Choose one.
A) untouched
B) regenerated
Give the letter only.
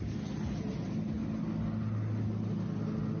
A